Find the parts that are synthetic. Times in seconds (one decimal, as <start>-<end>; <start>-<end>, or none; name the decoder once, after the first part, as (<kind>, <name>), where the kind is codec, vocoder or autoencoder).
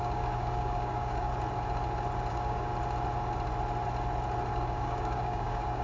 0.0-1.3 (codec, DAC); 2.3-2.7; 4.5-5.8